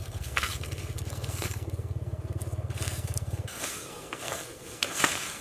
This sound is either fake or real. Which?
fake